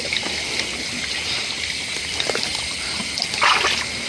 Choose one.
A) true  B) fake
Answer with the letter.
A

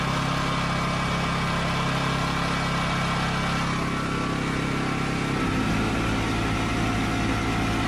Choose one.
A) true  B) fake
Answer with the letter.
A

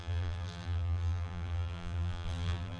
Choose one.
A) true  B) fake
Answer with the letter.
B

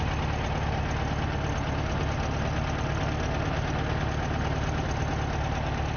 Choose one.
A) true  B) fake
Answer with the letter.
A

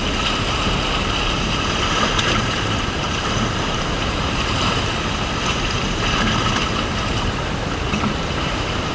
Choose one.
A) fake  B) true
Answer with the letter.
A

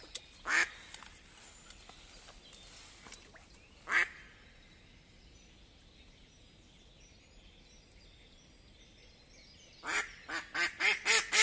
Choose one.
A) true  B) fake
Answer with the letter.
A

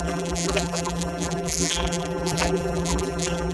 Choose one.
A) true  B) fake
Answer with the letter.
B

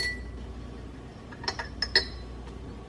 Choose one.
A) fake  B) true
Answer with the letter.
B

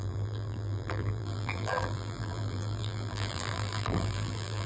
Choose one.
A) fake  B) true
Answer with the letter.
A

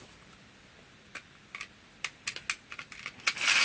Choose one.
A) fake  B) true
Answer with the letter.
B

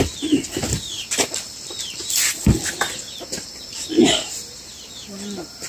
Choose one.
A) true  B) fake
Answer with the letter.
A